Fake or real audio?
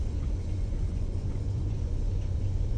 fake